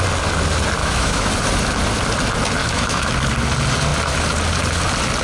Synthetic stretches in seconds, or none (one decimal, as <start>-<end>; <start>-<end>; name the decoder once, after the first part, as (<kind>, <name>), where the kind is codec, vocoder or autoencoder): 0.8-1.3 (autoencoder, DAC-VAE); 2.6-3.1